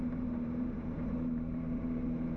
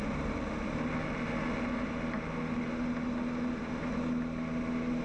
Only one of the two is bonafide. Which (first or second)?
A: second